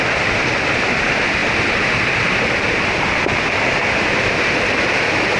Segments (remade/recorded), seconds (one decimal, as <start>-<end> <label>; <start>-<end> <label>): 0.0-5.4 recorded